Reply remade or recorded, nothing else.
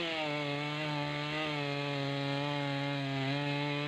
recorded